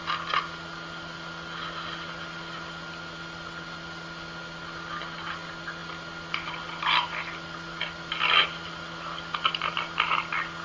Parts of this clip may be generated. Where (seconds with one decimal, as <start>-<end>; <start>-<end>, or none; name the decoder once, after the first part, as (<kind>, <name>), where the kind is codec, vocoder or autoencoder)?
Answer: none